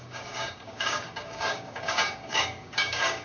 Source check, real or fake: fake